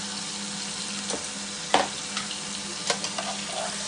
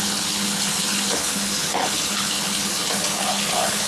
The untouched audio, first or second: first